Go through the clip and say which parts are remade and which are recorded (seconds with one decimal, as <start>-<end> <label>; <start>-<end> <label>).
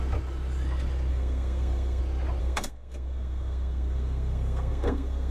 0.0-1.1 recorded; 1.1-2.0 remade; 2.0-2.4 recorded; 2.4-5.3 remade